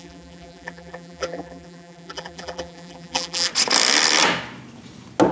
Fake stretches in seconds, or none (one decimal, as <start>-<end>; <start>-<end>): 0.0-3.5